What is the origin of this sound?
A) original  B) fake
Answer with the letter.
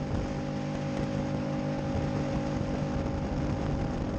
A